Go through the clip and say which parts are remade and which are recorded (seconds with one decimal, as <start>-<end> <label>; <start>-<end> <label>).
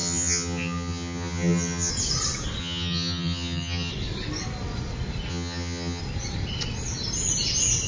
0.0-1.9 remade; 1.9-2.6 recorded; 2.6-3.9 remade; 3.9-5.3 recorded; 5.3-6.0 remade; 6.0-7.9 recorded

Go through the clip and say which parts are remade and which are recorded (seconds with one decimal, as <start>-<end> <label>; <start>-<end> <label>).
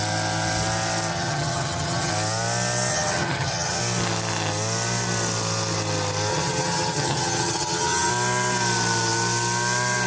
0.0-1.1 recorded; 1.1-2.1 remade; 2.1-2.9 recorded; 2.9-3.8 remade; 3.8-6.3 recorded; 6.3-8.1 remade; 8.1-10.1 recorded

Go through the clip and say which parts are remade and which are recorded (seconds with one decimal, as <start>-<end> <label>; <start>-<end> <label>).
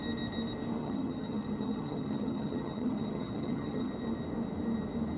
0.0-0.8 recorded; 0.8-3.9 remade; 3.9-5.2 recorded